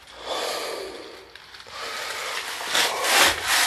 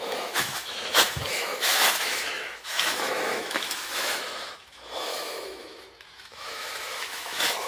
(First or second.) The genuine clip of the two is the first